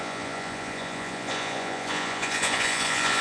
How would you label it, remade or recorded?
remade